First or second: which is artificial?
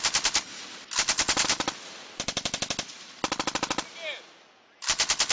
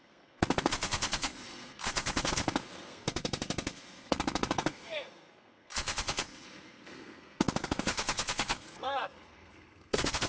second